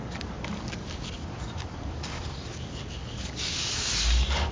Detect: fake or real fake